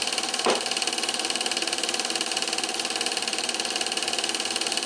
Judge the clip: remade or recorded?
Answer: remade